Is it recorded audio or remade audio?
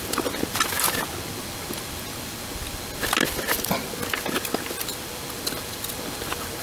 recorded